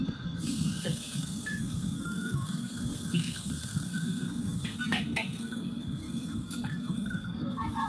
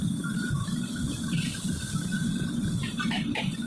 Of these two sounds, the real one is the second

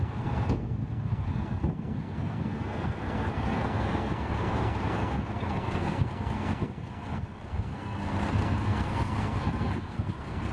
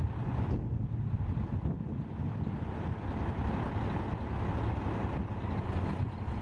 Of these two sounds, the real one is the second